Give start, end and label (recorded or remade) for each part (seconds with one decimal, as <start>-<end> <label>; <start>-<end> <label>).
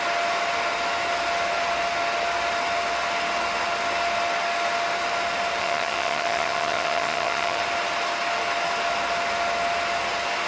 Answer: 0.0-5.6 recorded; 5.6-7.6 remade; 7.6-10.5 recorded